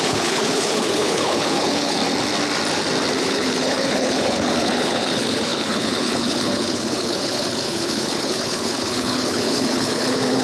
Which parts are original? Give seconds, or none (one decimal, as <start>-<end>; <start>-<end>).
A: 2.0-3.2